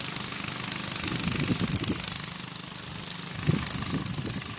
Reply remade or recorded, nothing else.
recorded